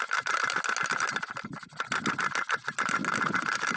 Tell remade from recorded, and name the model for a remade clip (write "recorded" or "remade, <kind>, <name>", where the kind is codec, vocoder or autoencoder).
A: recorded